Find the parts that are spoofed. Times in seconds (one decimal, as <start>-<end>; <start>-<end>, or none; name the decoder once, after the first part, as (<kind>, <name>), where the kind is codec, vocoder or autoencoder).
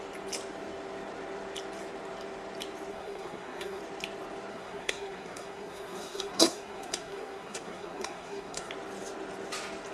2.9-3.8 (codec, SNAC); 4.5-8.7